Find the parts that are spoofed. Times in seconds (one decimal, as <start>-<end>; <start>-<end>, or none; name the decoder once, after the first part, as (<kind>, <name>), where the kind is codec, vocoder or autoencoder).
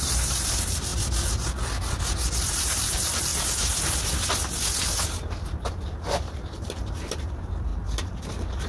0.0-0.9 (vocoder, BigVGAN v2); 2.5-3.3; 5.7-7.7; 8.2-8.7